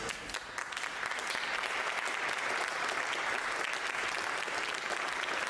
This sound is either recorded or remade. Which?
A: recorded